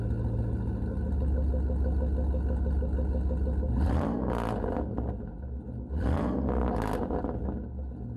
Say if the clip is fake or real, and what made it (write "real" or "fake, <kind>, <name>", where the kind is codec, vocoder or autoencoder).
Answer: real